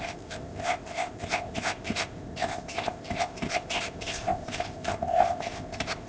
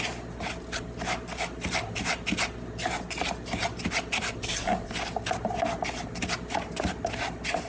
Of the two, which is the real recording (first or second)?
second